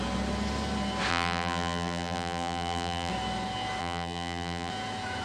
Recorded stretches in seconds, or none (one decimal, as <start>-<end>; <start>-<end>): 0.0-1.1; 3.1-3.8; 4.7-5.2